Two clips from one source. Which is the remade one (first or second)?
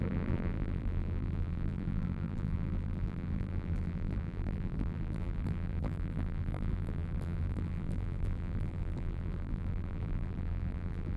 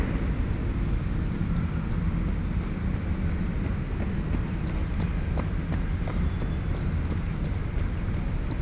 first